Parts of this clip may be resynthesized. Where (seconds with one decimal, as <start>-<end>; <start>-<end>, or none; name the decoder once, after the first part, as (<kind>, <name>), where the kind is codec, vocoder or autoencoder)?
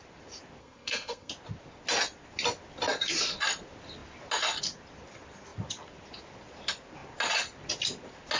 0.6-1.3 (codec, SNAC)